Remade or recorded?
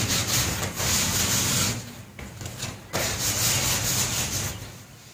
recorded